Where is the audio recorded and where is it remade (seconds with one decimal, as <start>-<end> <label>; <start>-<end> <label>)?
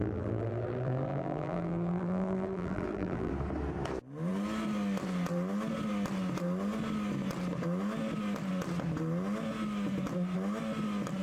0.0-3.3 remade; 3.3-11.2 recorded